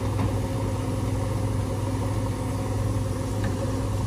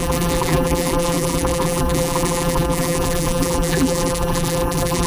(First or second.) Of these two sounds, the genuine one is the first